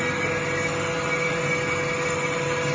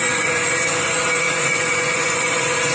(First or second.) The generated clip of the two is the second